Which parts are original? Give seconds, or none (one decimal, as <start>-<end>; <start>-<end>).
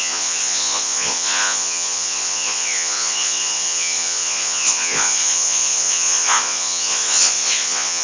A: none